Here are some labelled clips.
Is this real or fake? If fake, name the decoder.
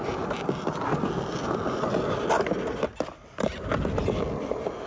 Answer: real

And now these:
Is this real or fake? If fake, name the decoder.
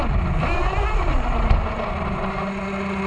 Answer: real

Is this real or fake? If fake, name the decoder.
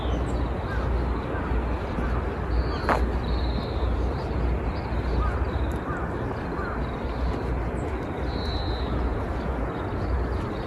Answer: real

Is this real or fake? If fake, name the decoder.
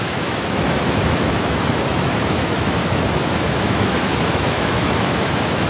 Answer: fake, autoencoder, DAC-VAE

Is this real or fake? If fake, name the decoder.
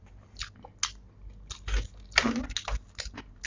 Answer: real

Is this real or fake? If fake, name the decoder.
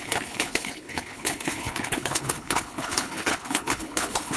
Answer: fake, codec, HILCodec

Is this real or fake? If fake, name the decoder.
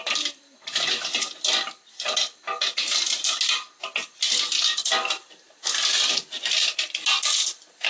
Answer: real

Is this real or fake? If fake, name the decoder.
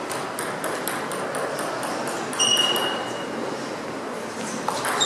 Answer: real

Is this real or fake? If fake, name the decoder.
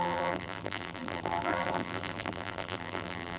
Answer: fake, vocoder, BigVGAN v2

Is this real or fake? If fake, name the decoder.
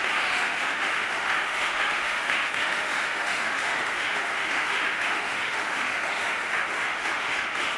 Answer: fake, autoencoder, DAC-VAE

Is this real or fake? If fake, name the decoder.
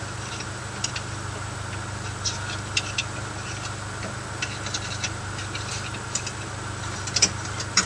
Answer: real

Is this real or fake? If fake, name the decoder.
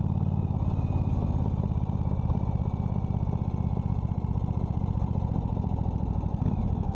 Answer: real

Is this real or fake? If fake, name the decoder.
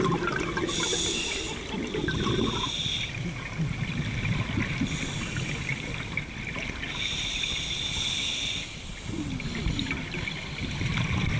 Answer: real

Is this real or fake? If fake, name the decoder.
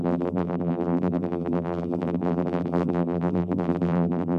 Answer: fake, vocoder, BigVGAN v2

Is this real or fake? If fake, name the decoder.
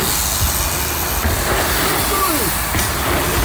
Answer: real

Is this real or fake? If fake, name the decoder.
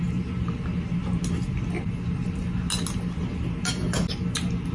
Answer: real